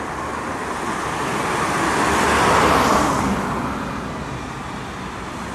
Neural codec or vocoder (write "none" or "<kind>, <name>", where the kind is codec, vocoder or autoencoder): none